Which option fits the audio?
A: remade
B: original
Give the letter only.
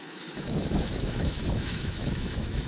A